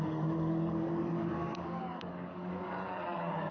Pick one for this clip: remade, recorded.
remade